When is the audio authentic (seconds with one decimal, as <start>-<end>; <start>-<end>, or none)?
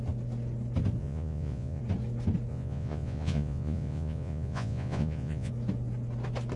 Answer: 0.0-1.0; 1.8-2.5; 5.5-6.6